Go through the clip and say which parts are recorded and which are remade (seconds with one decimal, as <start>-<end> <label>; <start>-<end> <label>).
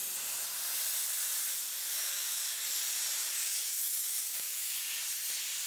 0.0-1.8 recorded; 1.8-2.6 remade; 2.6-3.2 recorded; 3.2-4.8 remade; 4.8-5.7 recorded